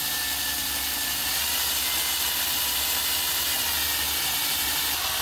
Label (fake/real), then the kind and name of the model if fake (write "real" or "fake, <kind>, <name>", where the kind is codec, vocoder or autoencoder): real